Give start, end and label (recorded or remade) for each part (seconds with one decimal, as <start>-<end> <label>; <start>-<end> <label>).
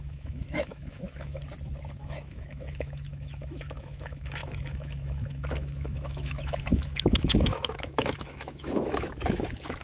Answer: 0.0-1.4 remade; 1.4-2.0 recorded; 2.0-9.8 remade